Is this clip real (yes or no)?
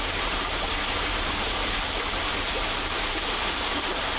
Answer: no